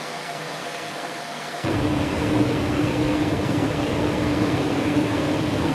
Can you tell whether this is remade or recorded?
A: remade